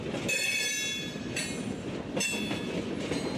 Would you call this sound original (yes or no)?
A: yes